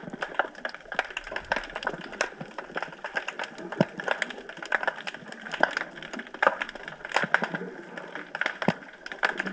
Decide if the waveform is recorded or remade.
recorded